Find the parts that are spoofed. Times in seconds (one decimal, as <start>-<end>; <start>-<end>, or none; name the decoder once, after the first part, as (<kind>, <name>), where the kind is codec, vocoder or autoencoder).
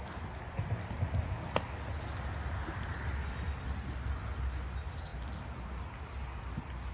none